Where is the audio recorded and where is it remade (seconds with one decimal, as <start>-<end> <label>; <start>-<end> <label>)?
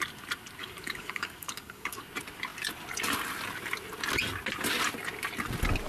0.0-0.6 recorded; 0.6-2.0 remade; 2.0-5.9 recorded